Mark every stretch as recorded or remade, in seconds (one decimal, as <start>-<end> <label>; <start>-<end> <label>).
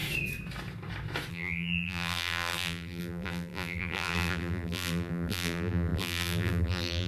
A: 0.0-1.3 recorded; 1.3-7.1 remade